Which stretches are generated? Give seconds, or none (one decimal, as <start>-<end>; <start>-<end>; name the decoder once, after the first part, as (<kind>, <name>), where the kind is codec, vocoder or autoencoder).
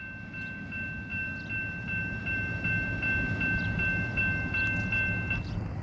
1.1-4.2 (vocoder, BigVGAN v2)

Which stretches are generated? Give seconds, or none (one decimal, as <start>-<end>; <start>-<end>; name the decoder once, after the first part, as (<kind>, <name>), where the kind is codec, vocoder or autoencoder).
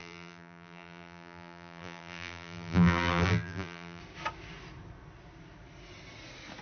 0.0-4.0 (vocoder, BigVGAN v2)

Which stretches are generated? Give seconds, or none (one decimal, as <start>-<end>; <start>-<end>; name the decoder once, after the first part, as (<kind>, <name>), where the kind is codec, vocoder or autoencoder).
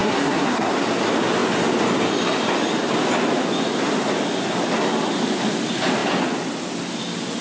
0.0-0.7 (codec, SNAC)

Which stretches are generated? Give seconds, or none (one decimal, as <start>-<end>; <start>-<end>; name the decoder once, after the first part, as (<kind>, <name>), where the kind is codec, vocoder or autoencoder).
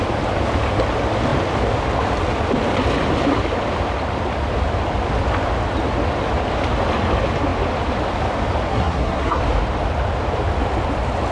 8.7-9.4 (codec, SNAC)